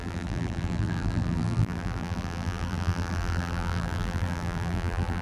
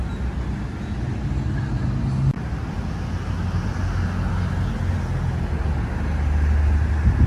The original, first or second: second